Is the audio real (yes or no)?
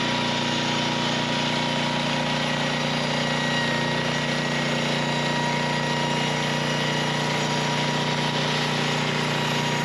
yes